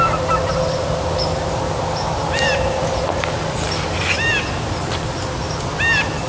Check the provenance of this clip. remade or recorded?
recorded